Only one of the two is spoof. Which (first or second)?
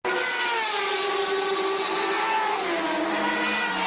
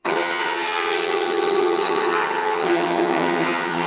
second